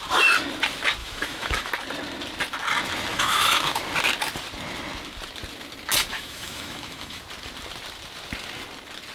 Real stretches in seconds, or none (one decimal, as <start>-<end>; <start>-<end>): 0.0-1.0; 1.7-3.1; 3.8-6.1; 7.2-9.1